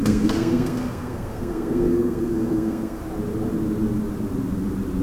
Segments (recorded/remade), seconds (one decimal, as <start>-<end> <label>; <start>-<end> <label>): 0.0-3.0 remade; 3.0-5.0 recorded